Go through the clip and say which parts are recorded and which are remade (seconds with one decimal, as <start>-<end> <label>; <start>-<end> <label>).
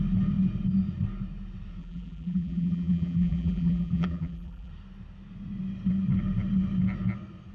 0.0-1.8 recorded; 1.8-4.7 remade; 4.7-7.5 recorded